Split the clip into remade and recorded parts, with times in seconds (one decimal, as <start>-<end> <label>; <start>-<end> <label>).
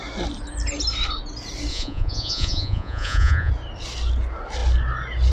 0.0-1.7 recorded; 1.7-3.5 remade; 3.5-5.3 recorded